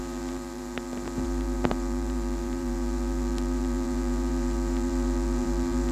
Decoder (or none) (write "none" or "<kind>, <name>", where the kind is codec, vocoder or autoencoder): vocoder, BigVGAN v2